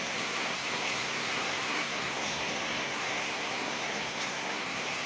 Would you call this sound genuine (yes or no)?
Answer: no